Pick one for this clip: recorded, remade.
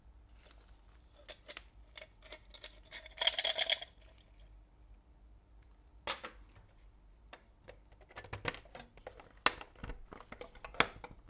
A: recorded